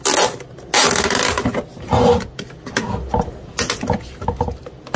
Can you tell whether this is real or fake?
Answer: real